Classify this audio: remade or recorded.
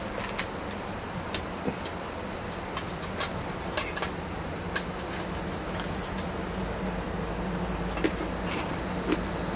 recorded